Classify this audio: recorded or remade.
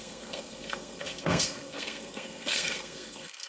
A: remade